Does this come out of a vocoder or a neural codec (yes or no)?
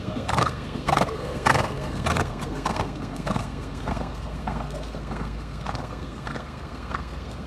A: yes